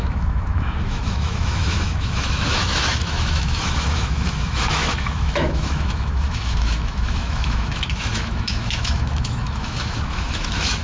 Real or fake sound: fake